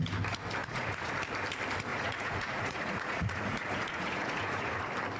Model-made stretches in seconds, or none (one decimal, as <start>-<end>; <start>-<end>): 0.6-1.1; 1.9-4.8